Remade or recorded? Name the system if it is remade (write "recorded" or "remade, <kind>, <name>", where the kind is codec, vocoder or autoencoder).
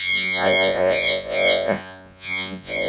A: remade, vocoder, Vocos